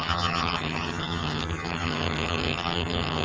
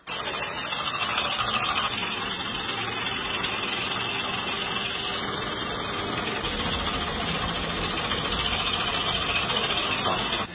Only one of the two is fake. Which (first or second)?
first